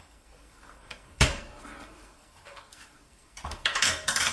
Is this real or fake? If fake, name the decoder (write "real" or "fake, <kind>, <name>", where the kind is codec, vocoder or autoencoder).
fake, codec, SNAC